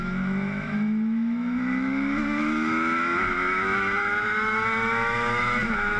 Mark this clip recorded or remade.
remade